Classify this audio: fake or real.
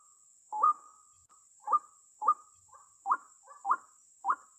fake